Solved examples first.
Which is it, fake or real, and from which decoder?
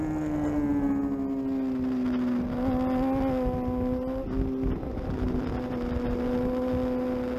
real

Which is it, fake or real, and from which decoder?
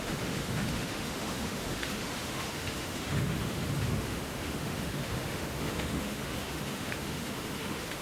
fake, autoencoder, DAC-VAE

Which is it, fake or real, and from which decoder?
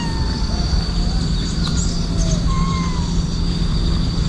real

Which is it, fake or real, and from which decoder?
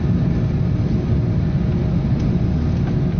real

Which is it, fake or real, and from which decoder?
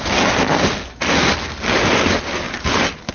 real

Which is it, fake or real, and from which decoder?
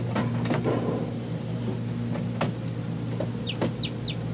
real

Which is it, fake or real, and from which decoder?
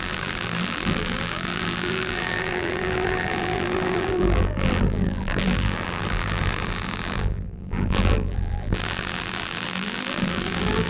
fake, vocoder, BigVGAN v2